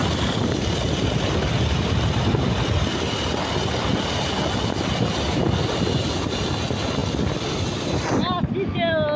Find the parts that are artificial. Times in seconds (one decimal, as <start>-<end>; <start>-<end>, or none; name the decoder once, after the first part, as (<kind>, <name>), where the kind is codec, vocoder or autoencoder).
none

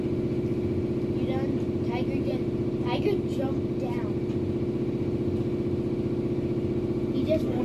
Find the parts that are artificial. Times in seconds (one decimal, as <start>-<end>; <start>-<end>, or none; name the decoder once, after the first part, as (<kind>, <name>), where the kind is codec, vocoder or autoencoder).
none

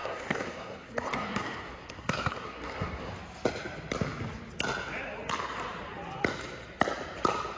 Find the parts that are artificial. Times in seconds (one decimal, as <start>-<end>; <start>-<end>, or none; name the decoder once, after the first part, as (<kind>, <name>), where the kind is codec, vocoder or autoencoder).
0.0-3.1 (codec, SNAC)

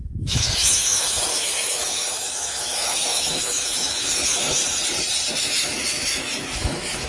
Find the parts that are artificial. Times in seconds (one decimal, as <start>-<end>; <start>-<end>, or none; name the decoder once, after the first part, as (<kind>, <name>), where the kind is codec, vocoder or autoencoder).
0.0-4.6 (autoencoder, DAC-VAE); 5.4-7.1

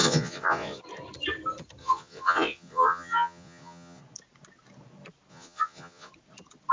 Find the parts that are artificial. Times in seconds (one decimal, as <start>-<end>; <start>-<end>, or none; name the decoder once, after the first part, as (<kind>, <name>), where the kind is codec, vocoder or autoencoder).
0.0-0.8 (vocoder, Vocos); 1.8-4.0; 5.3-6.1